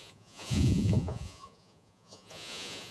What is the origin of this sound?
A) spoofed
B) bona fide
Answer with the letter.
A